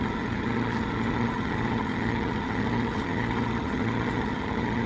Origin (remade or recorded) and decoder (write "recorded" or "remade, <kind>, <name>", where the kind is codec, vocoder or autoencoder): remade, vocoder, HiFi-GAN